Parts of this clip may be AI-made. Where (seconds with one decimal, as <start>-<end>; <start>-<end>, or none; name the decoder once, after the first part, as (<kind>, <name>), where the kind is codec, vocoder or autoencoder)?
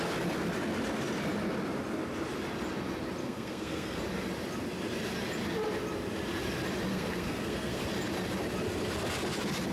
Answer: 3.2-4.0 (codec, SNAC); 6.9-7.8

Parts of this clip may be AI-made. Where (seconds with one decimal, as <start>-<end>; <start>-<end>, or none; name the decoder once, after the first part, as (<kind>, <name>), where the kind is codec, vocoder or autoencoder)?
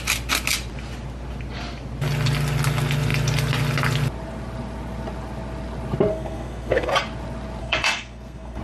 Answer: 6.1-6.9 (codec, SNAC); 7.6-8.6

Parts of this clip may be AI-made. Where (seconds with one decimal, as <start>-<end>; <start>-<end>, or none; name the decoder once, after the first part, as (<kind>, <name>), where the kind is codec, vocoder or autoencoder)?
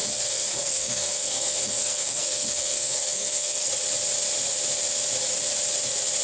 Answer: 0.0-3.7 (codec, SNAC)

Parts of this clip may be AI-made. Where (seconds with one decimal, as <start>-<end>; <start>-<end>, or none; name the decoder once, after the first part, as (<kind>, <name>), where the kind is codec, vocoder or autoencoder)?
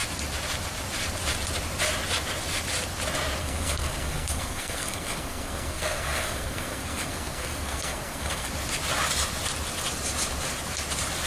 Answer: 3.4-8.5 (codec, SNAC)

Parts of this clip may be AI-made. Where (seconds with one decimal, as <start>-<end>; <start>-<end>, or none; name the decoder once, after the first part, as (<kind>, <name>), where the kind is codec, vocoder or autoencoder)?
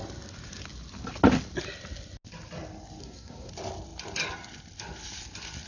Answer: 3.0-3.5 (codec, SNAC)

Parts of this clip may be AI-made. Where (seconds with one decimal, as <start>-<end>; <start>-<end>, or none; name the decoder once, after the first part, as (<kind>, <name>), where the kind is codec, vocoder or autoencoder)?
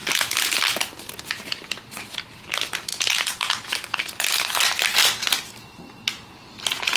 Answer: none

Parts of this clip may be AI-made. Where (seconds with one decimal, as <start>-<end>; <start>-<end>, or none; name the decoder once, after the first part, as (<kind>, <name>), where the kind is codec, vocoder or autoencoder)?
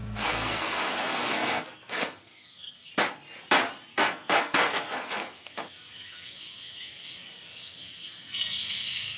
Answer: 0.0-2.9 (codec, SNAC); 3.9-9.2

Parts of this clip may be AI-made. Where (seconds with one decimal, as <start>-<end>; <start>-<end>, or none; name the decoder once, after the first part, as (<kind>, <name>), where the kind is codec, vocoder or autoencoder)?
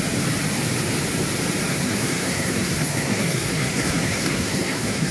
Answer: 1.7-5.1 (codec, SNAC)